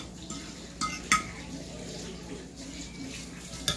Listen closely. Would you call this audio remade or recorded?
recorded